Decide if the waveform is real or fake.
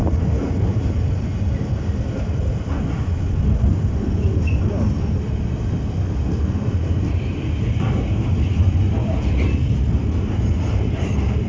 real